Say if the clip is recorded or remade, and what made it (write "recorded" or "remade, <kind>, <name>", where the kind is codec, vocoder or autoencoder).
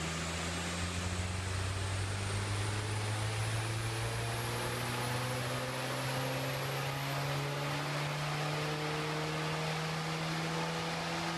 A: recorded